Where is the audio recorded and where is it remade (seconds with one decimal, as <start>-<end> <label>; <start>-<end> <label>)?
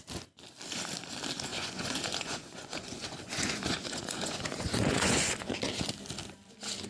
0.0-1.5 recorded; 1.5-5.5 remade; 5.5-6.9 recorded